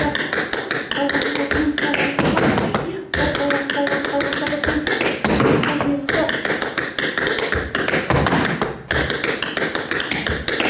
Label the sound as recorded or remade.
recorded